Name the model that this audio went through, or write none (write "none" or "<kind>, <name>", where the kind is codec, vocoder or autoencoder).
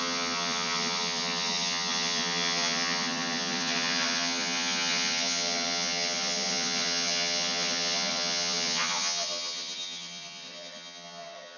vocoder, HiFi-GAN